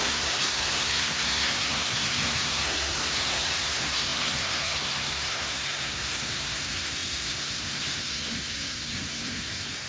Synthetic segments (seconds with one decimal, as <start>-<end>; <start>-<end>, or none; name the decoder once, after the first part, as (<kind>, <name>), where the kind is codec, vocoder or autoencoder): 0.0-9.9 (codec, SNAC)